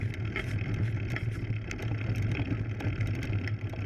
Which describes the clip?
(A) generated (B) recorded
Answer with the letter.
B